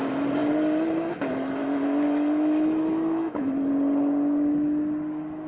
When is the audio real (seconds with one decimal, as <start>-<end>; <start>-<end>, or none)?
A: 0.0-1.6; 3.5-5.5